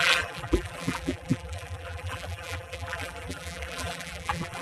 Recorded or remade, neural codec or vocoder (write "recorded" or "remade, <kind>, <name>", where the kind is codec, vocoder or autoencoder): remade, vocoder, BigVGAN v2